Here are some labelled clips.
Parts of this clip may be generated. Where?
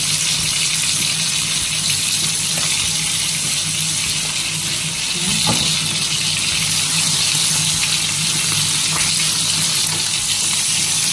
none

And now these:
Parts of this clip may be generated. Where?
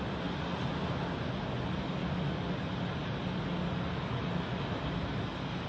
none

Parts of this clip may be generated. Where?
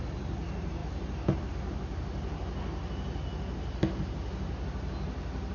none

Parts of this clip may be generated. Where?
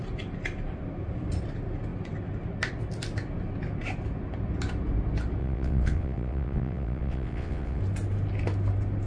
5.4-7.8 (vocoder, WaveNeXt)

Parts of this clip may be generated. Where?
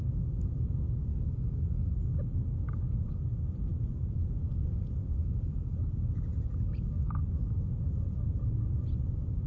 1.1-1.9 (codec, DAC); 5.2-5.8; 6.3-7.2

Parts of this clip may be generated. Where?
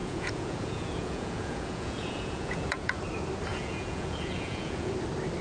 0.0-3.0 (vocoder, Vocos); 3.5-4.9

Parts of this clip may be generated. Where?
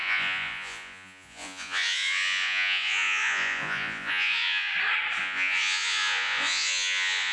0.0-4.7 (vocoder, Vocos); 5.2-7.3